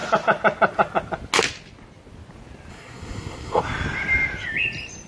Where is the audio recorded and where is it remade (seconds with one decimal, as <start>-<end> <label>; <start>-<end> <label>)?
0.0-2.7 recorded; 2.7-3.6 remade; 3.6-5.1 recorded